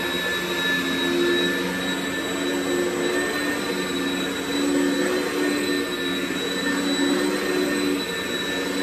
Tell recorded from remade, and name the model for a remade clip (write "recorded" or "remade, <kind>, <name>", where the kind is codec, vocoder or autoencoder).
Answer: recorded